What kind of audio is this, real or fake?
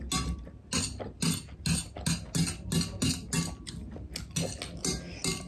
real